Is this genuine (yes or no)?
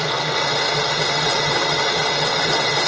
no